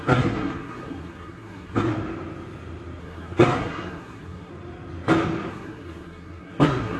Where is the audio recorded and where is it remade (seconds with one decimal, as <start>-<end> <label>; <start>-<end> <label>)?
0.0-1.9 remade; 1.9-3.0 recorded; 3.0-4.5 remade; 4.5-5.5 recorded; 5.5-7.0 remade